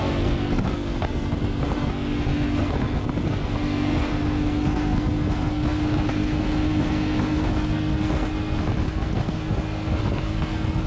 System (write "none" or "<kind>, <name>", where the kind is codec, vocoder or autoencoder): codec, SNAC